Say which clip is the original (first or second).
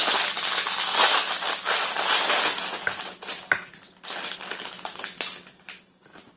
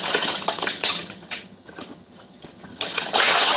first